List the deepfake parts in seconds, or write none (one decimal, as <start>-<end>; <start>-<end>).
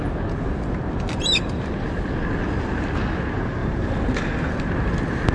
3.6-4.5